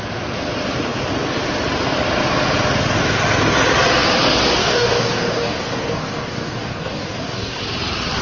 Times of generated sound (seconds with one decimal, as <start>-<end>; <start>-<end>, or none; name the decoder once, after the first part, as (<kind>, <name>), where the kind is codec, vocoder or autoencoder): 4.6-7.6 (codec, DAC)